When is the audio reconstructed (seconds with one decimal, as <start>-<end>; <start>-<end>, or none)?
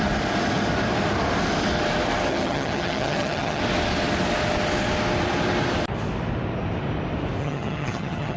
2.3-3.6; 7.4-8.4